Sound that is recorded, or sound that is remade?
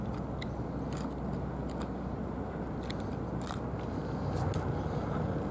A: recorded